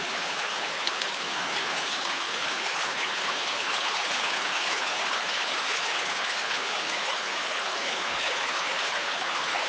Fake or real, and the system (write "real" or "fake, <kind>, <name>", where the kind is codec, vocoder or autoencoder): fake, codec, HILCodec